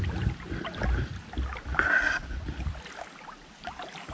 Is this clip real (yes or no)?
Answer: no